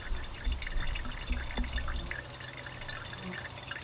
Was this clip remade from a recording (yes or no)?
no